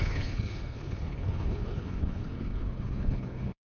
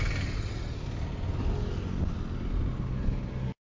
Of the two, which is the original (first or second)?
second